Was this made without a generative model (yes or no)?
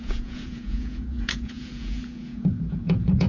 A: no